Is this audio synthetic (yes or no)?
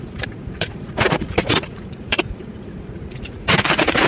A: yes